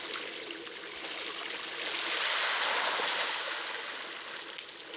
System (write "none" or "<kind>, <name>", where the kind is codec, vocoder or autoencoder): none